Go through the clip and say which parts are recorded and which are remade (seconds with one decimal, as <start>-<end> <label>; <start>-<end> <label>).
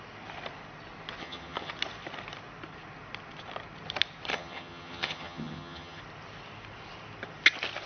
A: 0.0-1.2 recorded; 1.2-1.7 remade; 1.7-4.3 recorded; 4.3-6.0 remade; 6.0-7.9 recorded